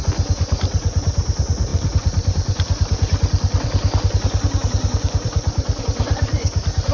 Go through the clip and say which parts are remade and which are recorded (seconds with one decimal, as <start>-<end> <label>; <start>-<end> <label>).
0.0-1.7 recorded; 1.7-5.8 remade; 5.8-6.9 recorded